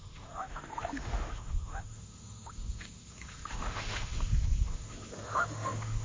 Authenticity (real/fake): fake